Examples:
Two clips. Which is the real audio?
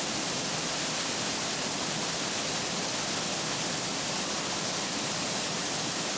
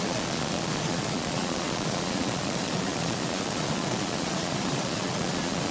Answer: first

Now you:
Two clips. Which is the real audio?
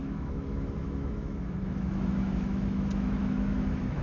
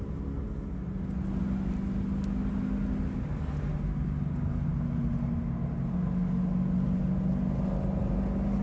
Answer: second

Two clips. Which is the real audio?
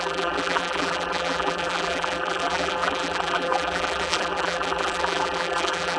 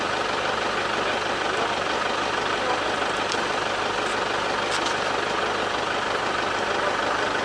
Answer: second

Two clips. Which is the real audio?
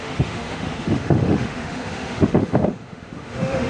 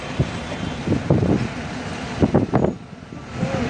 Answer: second